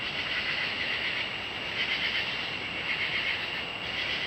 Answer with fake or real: real